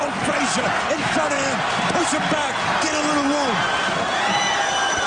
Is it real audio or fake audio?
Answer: real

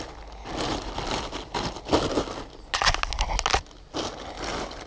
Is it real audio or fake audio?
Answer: real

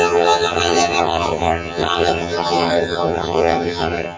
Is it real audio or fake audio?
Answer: fake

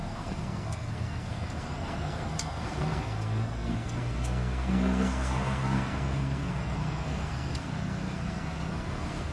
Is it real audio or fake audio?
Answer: fake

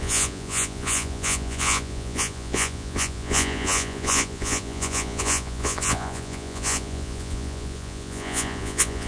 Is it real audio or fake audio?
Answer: fake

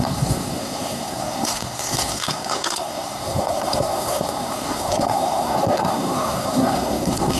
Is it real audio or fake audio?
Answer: fake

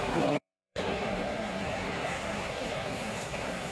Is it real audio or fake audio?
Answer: fake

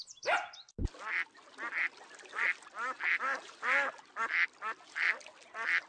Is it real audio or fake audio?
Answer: real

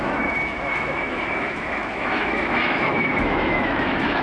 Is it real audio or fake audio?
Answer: fake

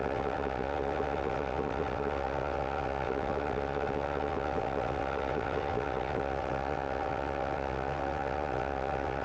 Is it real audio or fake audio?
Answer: fake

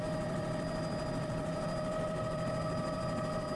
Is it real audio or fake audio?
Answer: fake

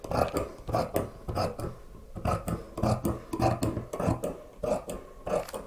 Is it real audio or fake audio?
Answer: real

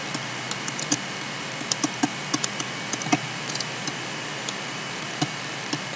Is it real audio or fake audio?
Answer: real